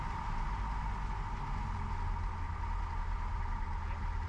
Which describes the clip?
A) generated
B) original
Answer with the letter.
B